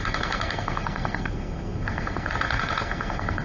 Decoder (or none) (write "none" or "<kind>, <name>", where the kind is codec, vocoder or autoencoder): codec, SNAC